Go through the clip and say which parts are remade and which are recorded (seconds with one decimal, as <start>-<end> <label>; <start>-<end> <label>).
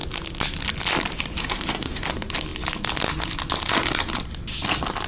0.0-1.4 recorded; 1.4-2.1 remade; 2.1-5.1 recorded